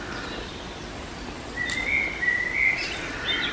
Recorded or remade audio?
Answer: recorded